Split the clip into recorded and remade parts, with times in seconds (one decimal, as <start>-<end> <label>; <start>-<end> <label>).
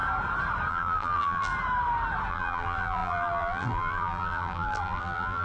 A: 0.0-0.7 recorded; 0.7-1.5 remade; 1.5-2.3 recorded; 2.3-5.4 remade